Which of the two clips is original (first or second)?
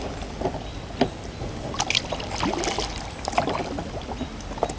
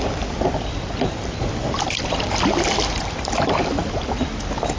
first